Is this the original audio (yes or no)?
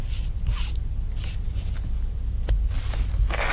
yes